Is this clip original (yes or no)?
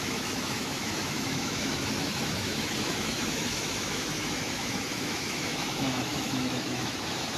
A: no